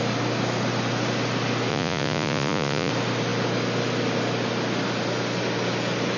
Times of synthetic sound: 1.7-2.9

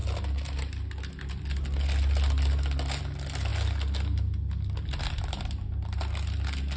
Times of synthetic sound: none